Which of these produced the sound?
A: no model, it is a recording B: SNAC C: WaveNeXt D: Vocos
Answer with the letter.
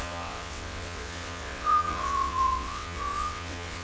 C